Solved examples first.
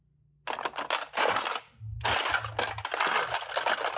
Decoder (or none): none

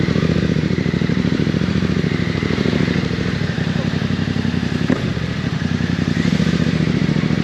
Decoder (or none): vocoder, BigVGAN v2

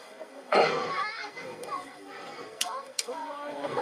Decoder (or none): codec, SNAC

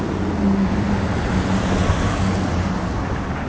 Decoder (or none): none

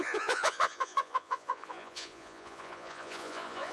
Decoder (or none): vocoder, Vocos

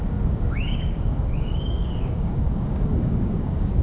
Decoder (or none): codec, DAC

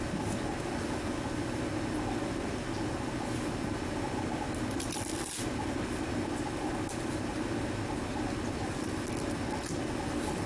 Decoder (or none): none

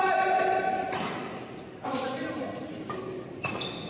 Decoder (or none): none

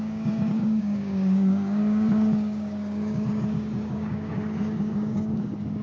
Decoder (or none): codec, DAC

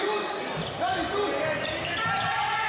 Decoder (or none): none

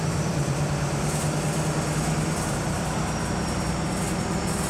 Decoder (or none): vocoder, BigVGAN v2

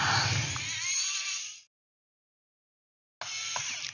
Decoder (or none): none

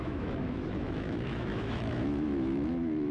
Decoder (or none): autoencoder, DAC-VAE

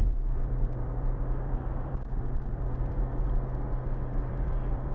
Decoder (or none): vocoder, BigVGAN v2